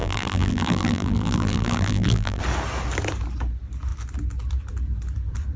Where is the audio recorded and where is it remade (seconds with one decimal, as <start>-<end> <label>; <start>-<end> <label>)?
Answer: 0.0-2.4 remade; 2.4-5.6 recorded